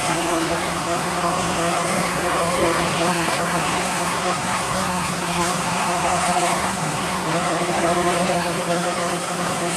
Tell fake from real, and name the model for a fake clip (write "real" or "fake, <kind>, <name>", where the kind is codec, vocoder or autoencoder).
fake, codec, SNAC